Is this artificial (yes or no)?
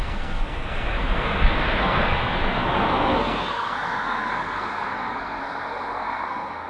yes